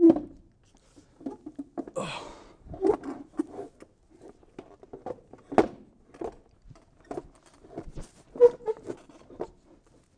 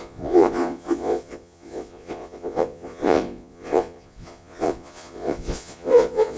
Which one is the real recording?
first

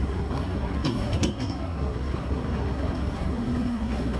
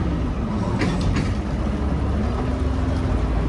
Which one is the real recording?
second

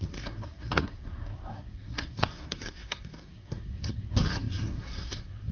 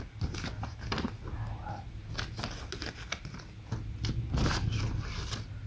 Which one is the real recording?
second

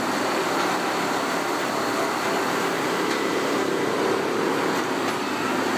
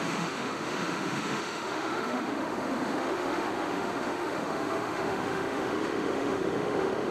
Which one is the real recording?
first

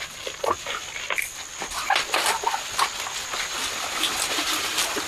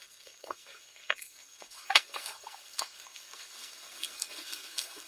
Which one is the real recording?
first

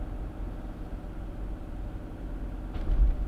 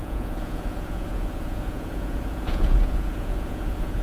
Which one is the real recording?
first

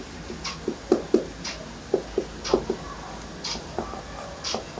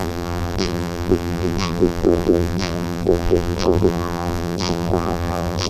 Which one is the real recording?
first